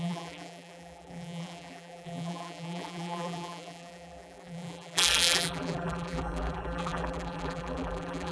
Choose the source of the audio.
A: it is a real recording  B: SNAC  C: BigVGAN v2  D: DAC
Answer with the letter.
C